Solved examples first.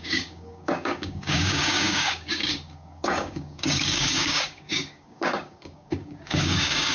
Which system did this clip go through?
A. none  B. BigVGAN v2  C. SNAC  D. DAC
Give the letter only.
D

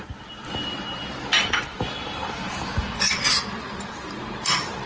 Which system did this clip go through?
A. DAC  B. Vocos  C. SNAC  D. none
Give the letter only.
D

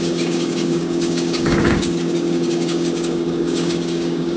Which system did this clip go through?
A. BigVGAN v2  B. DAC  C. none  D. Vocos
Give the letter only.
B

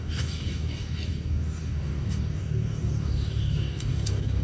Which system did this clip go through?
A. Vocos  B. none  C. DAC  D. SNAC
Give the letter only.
C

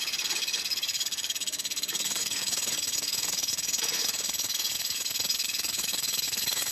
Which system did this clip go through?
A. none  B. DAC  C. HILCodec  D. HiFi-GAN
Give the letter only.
B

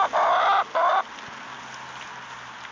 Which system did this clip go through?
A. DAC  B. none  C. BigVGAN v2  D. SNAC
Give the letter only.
B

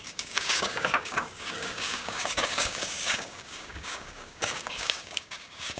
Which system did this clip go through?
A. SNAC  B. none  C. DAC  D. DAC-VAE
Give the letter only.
C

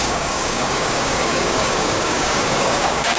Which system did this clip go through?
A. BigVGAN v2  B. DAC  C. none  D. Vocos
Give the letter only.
B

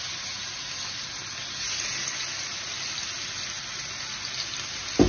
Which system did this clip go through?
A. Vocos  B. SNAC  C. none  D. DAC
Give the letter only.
C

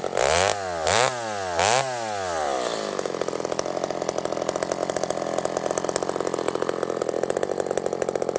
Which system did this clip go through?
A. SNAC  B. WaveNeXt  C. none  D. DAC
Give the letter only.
C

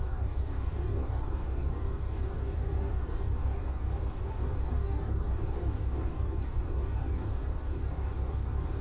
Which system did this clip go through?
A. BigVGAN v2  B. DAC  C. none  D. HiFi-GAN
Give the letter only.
B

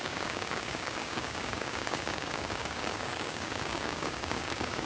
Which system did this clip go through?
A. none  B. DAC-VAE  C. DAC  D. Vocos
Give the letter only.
C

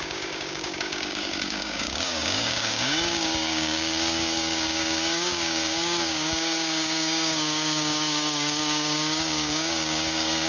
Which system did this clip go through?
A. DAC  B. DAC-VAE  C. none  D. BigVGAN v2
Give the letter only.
A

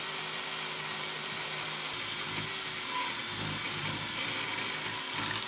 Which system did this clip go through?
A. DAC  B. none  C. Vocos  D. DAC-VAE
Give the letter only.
B